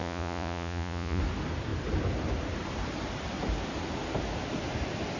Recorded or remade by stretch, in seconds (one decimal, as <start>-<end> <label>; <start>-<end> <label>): 0.0-1.2 remade; 1.2-5.2 recorded